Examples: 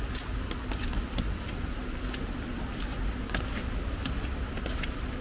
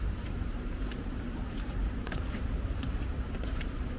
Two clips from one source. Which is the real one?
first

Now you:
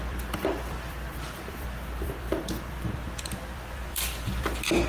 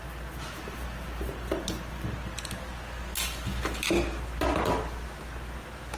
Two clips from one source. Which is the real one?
second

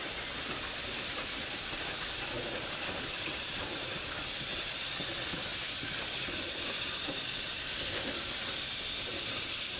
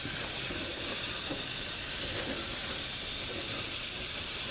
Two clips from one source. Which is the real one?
second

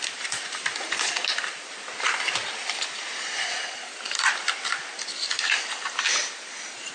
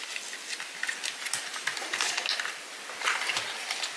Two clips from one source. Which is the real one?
second